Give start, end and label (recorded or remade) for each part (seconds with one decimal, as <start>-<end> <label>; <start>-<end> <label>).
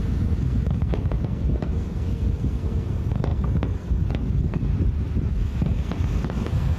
0.0-4.7 remade; 4.7-5.3 recorded; 5.3-6.8 remade